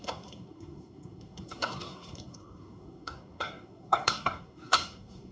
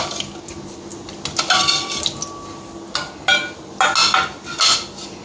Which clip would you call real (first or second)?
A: second